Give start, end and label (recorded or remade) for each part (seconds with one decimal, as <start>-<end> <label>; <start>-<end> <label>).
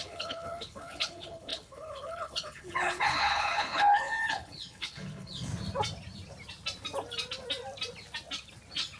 0.0-5.5 remade; 5.5-9.0 recorded